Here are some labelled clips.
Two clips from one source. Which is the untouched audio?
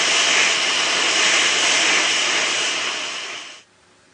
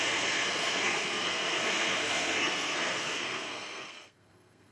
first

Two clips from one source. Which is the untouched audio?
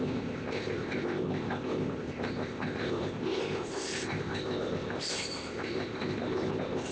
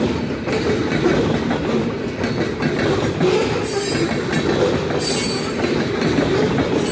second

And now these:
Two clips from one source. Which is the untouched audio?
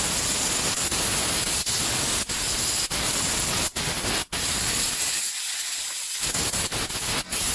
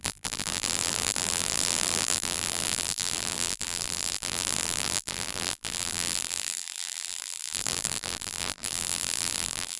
first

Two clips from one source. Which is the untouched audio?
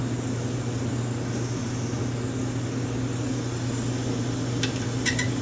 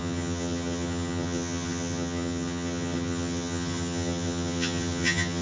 first